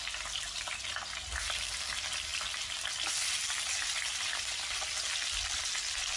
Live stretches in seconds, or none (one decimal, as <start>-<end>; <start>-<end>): 0.0-6.2